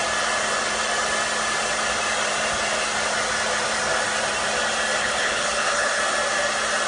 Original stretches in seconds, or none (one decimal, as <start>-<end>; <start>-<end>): 0.0-5.0; 6.0-6.9